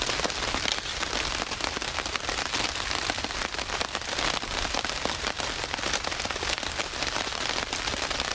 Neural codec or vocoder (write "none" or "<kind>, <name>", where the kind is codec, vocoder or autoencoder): none